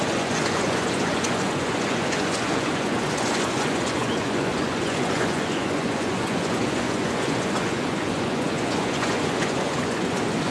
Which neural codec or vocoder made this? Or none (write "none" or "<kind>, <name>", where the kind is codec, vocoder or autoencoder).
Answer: vocoder, Vocos